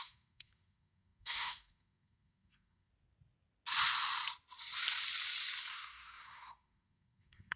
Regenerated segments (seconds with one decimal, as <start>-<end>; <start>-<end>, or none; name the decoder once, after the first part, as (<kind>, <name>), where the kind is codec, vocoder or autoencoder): 0.0-2.9 (codec, SNAC); 5.7-7.6